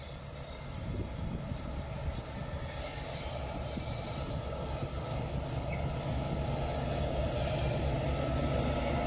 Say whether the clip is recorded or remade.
recorded